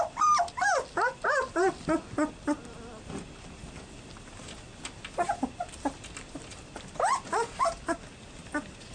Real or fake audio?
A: real